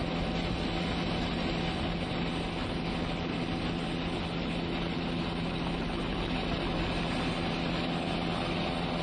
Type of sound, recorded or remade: recorded